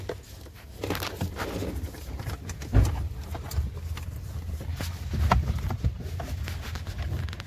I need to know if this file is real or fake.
real